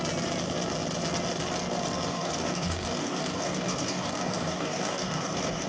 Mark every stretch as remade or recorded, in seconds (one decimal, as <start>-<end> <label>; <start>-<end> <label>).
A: 0.0-2.1 recorded; 2.1-5.7 remade

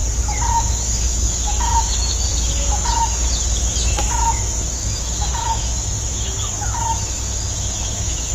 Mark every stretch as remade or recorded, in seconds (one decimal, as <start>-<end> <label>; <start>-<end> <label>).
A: 0.0-0.5 recorded; 0.5-8.3 remade

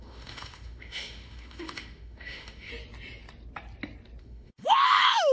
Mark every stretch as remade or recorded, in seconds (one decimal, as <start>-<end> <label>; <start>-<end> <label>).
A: 0.0-2.7 remade; 2.7-4.2 recorded; 4.2-5.3 remade

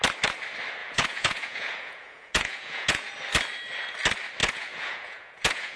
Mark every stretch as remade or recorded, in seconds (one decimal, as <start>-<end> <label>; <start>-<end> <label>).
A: 0.0-0.8 recorded; 0.8-3.1 remade; 3.1-4.4 recorded; 4.4-5.8 remade

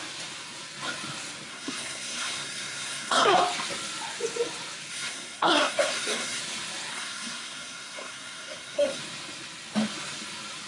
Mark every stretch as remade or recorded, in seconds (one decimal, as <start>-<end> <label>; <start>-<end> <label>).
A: 0.0-1.5 recorded; 1.5-3.4 remade; 3.4-4.9 recorded; 4.9-6.4 remade; 6.4-6.9 recorded; 6.9-9.0 remade; 9.0-10.7 recorded

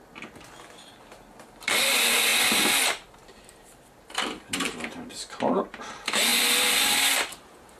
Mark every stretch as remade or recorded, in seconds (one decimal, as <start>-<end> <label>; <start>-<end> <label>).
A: 0.0-7.8 recorded

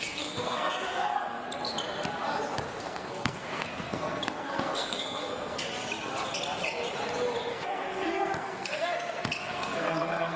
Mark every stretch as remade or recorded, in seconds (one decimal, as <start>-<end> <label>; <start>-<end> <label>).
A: 0.0-1.4 remade; 1.4-2.8 recorded; 2.8-5.7 remade; 5.7-7.5 recorded; 7.5-10.4 remade